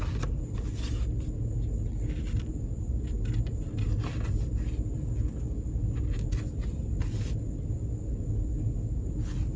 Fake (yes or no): no